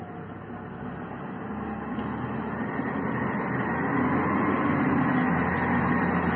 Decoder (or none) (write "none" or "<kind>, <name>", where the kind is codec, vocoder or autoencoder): none